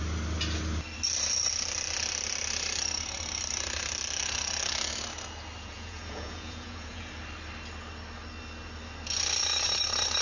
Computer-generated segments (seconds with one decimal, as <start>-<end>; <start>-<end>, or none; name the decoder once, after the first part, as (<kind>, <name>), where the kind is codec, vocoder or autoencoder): 5.6-7.1 (vocoder, Vocos)